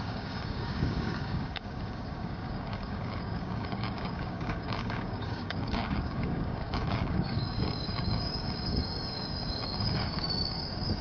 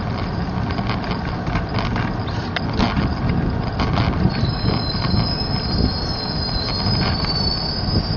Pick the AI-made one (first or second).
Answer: first